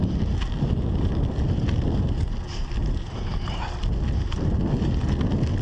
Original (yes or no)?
yes